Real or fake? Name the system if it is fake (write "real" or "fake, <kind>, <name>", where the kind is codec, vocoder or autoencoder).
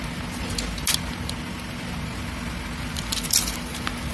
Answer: real